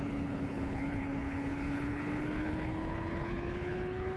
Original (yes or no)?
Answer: no